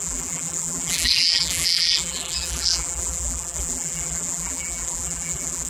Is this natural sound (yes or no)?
no